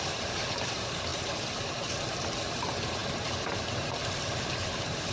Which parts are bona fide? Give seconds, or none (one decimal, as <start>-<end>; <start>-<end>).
1.1-2.5